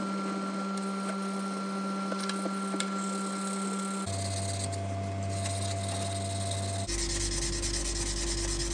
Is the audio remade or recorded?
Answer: recorded